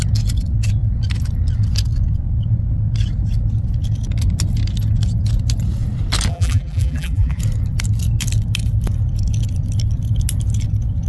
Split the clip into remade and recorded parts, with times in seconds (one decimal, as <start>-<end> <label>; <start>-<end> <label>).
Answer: 0.0-6.3 recorded; 6.3-7.4 remade; 7.4-11.1 recorded